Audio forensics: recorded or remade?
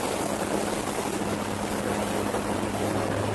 recorded